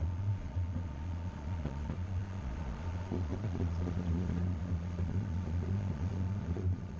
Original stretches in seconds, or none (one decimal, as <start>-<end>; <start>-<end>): none